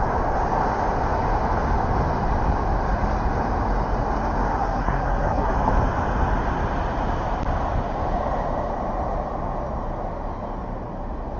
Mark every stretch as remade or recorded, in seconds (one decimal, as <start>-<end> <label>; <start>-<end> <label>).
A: 0.0-4.6 recorded; 4.6-5.5 remade; 5.5-11.4 recorded